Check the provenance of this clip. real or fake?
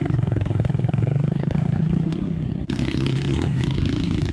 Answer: fake